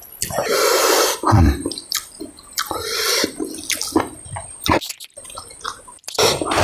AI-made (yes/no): yes